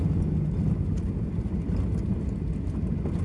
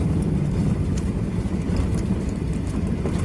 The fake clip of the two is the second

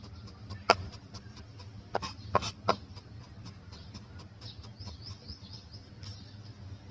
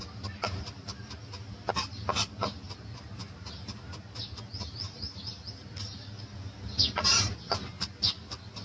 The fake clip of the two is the first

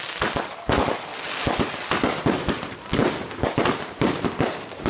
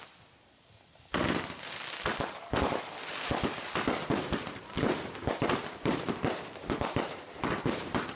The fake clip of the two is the second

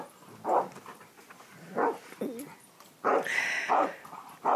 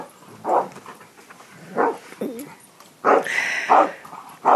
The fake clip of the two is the second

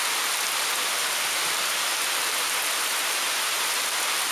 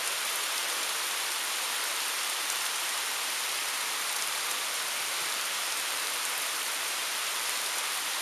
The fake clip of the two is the second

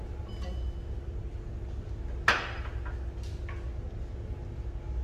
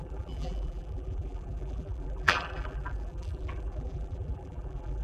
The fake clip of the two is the second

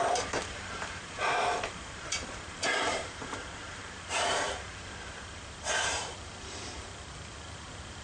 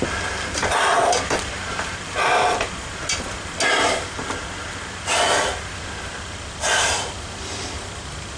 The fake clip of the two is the first